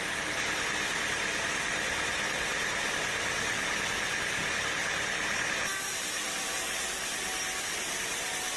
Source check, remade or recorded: recorded